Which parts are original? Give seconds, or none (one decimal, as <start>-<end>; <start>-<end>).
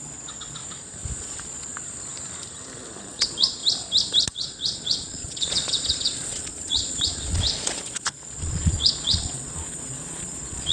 0.6-1.2; 1.7-3.1; 3.6-4.3